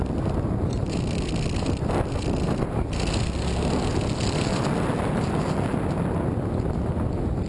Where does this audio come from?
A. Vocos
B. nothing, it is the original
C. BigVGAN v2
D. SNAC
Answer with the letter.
B